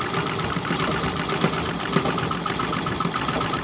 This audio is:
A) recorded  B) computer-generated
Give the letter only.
A